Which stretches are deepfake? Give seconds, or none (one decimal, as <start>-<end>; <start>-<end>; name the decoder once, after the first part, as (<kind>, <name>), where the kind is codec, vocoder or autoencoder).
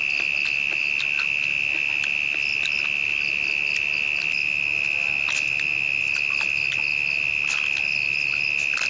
none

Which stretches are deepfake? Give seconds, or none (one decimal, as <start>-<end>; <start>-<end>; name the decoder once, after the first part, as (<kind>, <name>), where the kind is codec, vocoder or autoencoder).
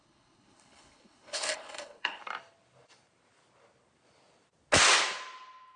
0.0-2.2 (codec, HILCodec)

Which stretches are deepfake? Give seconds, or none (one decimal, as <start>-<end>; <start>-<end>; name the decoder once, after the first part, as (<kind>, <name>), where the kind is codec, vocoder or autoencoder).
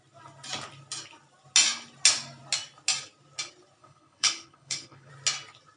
3.8-5.1 (codec, HILCodec)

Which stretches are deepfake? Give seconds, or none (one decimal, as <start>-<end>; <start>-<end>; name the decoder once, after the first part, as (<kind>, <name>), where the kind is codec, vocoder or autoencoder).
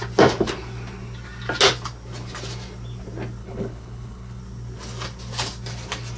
3.4-4.4 (codec, HILCodec)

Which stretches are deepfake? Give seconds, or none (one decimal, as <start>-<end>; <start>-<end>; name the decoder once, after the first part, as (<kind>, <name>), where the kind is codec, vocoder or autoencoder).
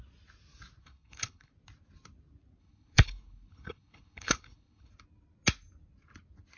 0.8-1.5 (codec, HILCodec); 2.6-4.9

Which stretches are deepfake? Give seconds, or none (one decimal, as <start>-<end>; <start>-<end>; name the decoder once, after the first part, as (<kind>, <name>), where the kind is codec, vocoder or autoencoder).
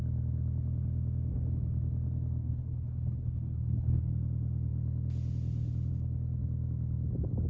2.4-4.1 (codec, HILCodec)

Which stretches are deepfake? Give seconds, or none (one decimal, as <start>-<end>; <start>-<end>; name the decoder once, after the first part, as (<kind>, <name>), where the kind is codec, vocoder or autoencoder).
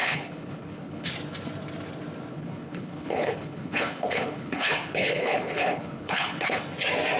0.0-1.1 (codec, HILCodec); 2.3-6.6